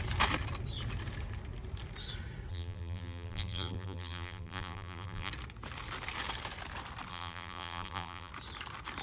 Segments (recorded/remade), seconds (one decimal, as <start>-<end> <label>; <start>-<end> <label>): 0.0-2.5 recorded; 2.5-5.3 remade; 5.3-7.1 recorded; 7.1-8.3 remade; 8.3-9.0 recorded